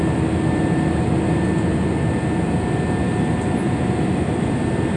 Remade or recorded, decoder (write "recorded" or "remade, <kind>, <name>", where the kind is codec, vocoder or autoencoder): recorded